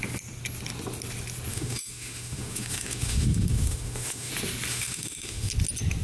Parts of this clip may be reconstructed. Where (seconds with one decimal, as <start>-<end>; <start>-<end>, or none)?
1.5-4.3; 4.7-5.5

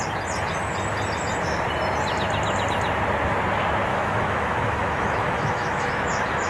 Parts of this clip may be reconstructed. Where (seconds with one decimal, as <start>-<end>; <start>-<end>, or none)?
3.9-6.5

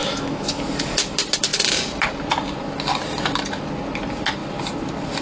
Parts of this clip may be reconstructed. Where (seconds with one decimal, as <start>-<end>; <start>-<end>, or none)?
0.0-0.6

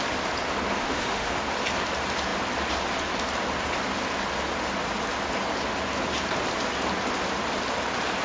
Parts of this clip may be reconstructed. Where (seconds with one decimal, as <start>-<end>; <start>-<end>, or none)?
0.8-1.3

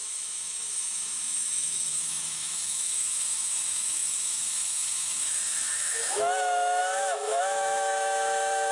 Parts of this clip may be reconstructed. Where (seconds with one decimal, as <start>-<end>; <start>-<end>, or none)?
0.0-8.7

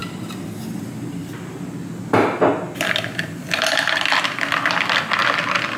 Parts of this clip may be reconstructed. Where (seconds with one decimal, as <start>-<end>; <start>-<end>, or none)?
none

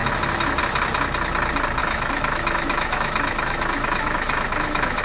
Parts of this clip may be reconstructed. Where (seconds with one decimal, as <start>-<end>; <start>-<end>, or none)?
1.8-5.0

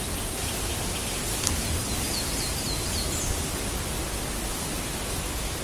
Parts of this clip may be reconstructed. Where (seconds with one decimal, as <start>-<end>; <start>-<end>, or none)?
none